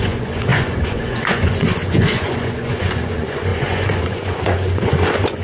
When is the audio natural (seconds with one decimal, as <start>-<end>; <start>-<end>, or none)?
none